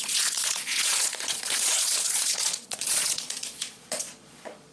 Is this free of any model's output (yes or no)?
no